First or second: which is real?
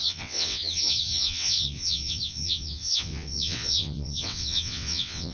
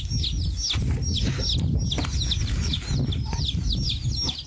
second